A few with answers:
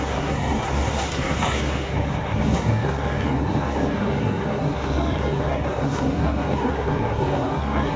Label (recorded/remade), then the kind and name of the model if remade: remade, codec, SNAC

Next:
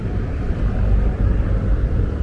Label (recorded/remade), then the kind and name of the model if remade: recorded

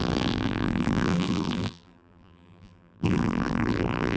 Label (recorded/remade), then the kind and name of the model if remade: remade, vocoder, BigVGAN v2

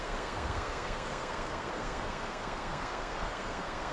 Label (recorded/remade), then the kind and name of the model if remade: remade, codec, SNAC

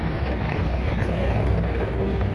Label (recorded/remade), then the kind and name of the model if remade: remade, codec, DAC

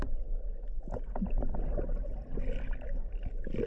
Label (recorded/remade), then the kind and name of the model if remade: recorded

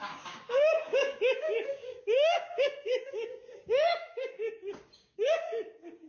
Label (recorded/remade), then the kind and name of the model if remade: remade, codec, DAC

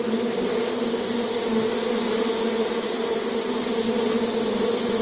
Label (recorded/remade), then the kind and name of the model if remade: recorded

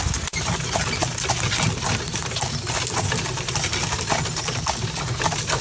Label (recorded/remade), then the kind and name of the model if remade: recorded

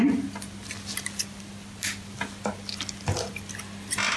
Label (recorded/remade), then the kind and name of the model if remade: recorded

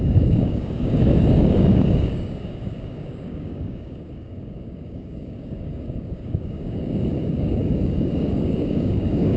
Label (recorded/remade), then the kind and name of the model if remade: remade, codec, DAC